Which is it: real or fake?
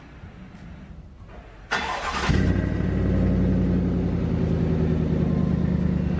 real